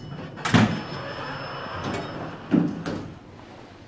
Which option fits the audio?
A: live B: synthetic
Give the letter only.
A